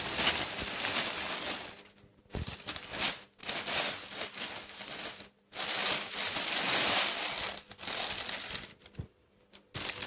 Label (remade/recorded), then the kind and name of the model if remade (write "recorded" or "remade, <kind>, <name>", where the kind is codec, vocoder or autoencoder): recorded